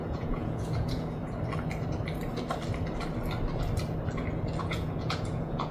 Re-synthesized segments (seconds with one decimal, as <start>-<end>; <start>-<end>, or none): 0.0-1.2; 4.6-5.7